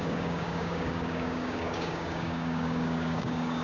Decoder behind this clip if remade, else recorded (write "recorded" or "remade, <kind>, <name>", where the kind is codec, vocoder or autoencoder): remade, codec, DAC